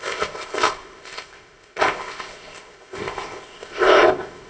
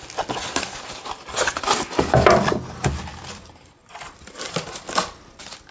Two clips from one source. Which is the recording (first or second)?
second